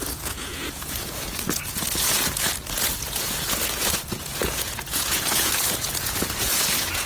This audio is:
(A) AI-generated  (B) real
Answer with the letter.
A